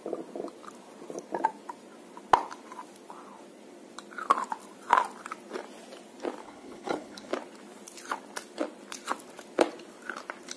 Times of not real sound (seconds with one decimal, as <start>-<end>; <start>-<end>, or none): 6.4-7.3